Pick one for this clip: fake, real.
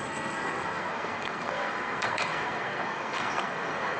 fake